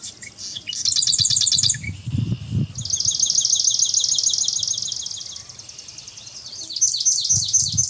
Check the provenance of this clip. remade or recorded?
recorded